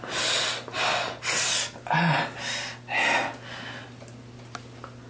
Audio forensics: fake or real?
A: real